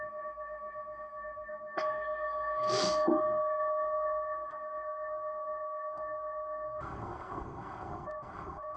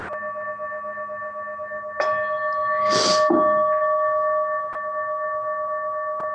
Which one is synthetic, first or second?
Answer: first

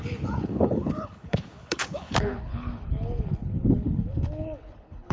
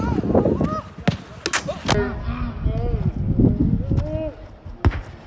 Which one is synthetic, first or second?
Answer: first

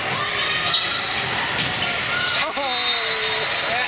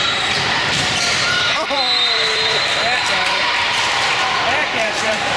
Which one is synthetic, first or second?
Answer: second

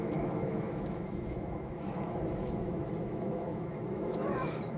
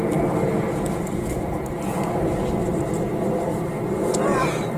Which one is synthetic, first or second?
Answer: first